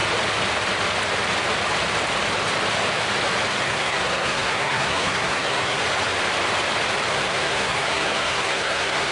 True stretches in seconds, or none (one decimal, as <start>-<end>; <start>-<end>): 0.0-3.6; 5.8-7.1